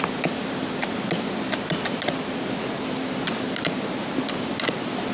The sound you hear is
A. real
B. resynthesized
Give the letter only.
A